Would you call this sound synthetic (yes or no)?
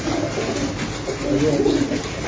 no